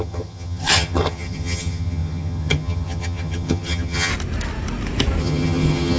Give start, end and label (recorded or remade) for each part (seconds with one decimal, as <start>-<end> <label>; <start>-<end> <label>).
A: 0.0-4.1 remade; 4.1-5.2 recorded; 5.2-6.0 remade